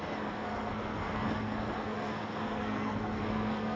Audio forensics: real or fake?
fake